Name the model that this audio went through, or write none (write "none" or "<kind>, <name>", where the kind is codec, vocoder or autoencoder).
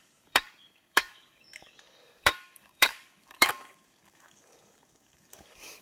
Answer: codec, DAC